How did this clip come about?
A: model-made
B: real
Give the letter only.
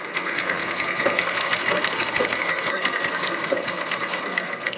A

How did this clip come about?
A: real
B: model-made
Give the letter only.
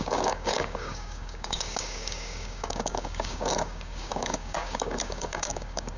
B